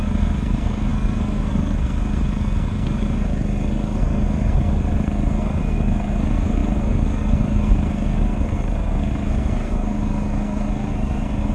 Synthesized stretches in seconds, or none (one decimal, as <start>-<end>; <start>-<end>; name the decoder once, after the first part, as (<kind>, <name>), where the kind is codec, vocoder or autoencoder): 0.0-11.5 (codec, SNAC)